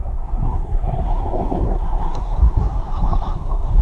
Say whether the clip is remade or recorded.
remade